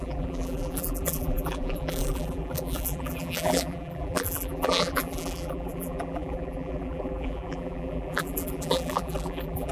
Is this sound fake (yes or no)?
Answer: yes